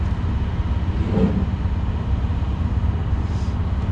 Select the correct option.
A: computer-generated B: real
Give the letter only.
B